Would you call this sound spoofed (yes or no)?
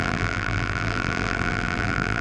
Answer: yes